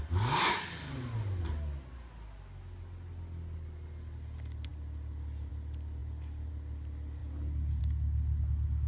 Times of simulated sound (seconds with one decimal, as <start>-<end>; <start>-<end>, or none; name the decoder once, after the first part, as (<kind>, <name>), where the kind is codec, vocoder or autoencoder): none